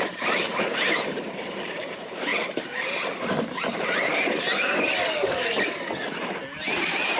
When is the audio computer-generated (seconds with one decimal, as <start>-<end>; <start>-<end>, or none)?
0.0-2.3; 6.6-7.2